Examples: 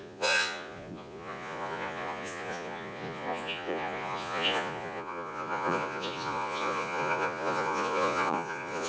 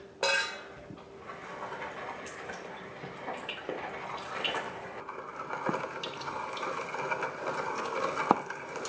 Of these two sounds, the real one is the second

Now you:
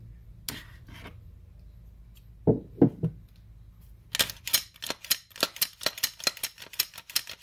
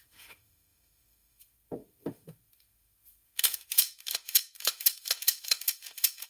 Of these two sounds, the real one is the first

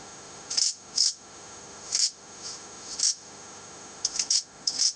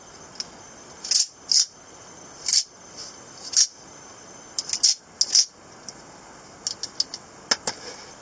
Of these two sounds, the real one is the second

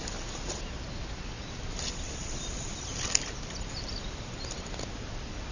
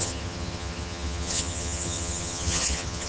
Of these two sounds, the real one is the first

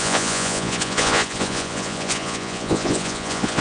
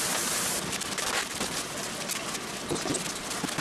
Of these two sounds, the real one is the second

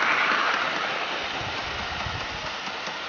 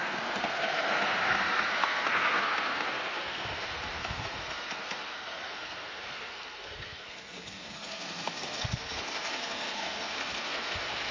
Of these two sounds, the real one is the first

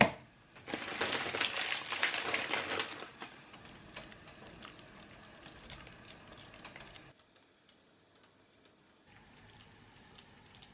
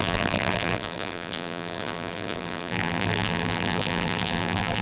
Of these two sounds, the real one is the first